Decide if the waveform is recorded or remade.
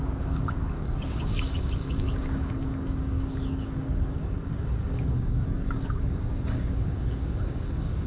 remade